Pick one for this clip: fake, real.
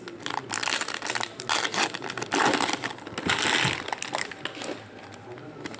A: real